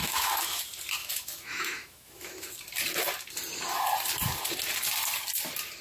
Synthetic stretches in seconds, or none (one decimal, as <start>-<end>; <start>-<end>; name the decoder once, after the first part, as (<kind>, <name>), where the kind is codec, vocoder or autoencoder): 0.0-0.6 (autoencoder, DAC-VAE); 1.0-2.5